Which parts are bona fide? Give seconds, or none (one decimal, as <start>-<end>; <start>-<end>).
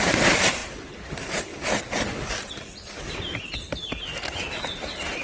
1.5-4.6